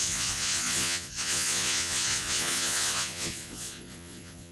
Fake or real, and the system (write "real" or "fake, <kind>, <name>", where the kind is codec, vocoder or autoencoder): fake, vocoder, Vocos